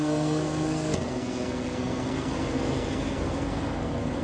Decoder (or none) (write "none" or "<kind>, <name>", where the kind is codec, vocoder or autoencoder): codec, SNAC